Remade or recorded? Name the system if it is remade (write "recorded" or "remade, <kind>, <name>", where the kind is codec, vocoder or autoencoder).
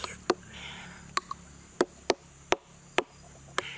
recorded